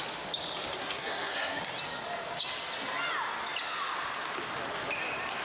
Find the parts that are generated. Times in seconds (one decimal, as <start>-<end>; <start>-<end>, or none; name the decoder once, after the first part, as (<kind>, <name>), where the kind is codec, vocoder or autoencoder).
0.8-1.6 (codec, SNAC)